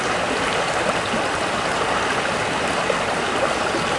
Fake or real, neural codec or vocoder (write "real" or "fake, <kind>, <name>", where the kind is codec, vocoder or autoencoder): real